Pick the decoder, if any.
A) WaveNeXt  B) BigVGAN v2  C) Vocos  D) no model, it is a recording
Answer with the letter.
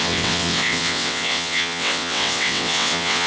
A